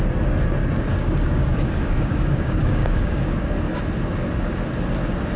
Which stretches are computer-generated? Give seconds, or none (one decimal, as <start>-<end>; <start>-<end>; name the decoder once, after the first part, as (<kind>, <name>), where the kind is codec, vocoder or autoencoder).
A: 0.6-3.8 (codec, DAC)